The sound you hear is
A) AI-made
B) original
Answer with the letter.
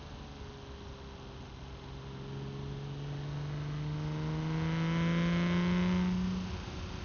B